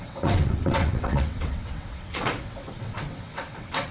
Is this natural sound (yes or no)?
no